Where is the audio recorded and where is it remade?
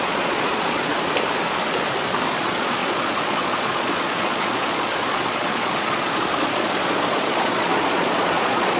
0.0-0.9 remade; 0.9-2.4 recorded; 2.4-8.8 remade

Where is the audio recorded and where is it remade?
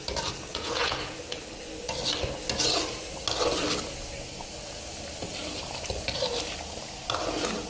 0.0-0.5 recorded; 0.5-1.4 remade; 1.4-7.7 recorded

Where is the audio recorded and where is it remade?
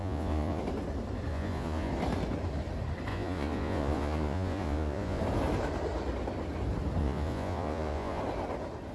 0.0-0.6 remade; 0.6-1.3 recorded; 1.3-1.9 remade; 1.9-3.1 recorded; 3.1-5.2 remade; 5.2-7.0 recorded; 7.0-8.2 remade; 8.2-8.9 recorded